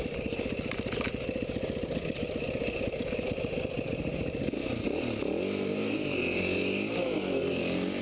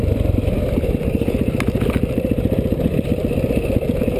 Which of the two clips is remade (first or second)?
second